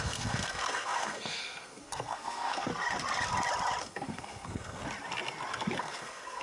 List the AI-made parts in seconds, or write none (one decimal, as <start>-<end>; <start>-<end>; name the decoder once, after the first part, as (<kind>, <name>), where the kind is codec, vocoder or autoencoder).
0.0-2.7 (codec, SNAC); 3.8-4.8; 5.8-6.4